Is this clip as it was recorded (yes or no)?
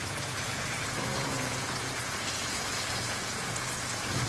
no